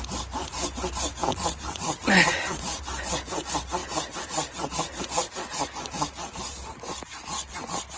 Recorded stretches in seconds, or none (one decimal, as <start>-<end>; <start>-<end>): 0.0-1.3; 2.0-8.0